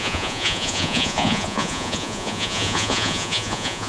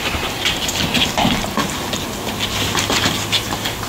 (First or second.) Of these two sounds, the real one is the second